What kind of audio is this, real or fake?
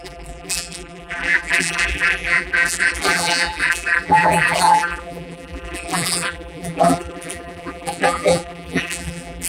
fake